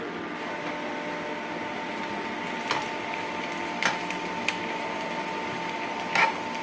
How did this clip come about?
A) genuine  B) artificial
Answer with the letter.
A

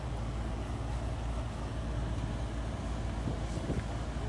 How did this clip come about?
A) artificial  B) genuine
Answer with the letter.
B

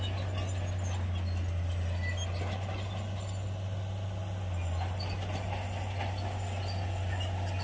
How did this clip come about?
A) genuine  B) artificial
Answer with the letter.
A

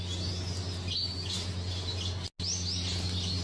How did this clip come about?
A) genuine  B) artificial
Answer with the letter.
A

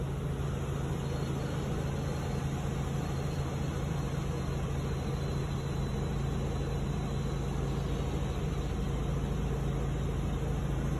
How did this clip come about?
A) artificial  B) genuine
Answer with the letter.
B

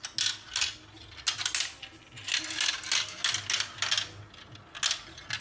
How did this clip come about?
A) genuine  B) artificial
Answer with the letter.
A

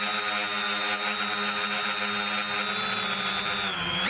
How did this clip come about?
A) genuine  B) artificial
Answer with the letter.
A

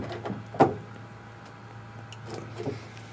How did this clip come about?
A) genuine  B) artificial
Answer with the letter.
A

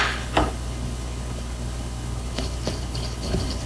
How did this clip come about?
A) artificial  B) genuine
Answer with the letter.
A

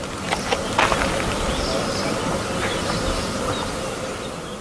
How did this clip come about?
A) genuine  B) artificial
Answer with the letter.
A